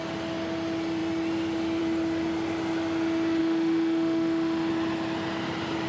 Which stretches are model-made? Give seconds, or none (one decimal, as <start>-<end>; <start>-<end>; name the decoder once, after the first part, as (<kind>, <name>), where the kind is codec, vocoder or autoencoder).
3.4-4.7 (autoencoder, DAC-VAE)